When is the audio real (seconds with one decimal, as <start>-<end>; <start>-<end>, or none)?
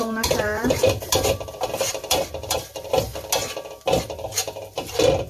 3.1-5.3